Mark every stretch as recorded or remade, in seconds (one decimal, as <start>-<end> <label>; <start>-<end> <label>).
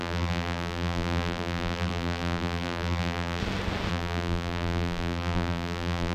0.0-3.4 remade; 3.4-3.9 recorded; 3.9-6.1 remade